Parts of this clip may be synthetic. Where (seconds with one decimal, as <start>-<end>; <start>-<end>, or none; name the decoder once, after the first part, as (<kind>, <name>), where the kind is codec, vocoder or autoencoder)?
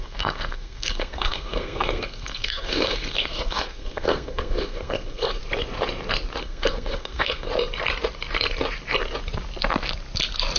0.0-5.4 (codec, SNAC); 6.4-7.5